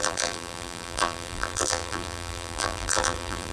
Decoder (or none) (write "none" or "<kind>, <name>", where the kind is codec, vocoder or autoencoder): vocoder, BigVGAN v2